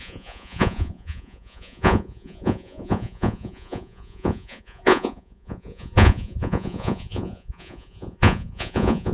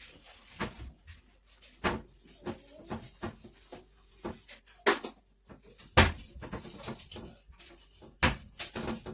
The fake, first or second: first